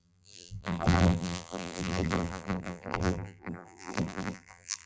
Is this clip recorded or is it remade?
remade